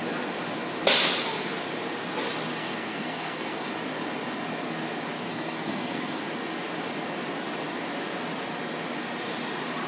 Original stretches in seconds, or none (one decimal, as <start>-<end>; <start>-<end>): 0.0-2.5; 3.7-5.3; 6.2-9.9